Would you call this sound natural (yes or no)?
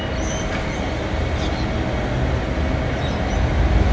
yes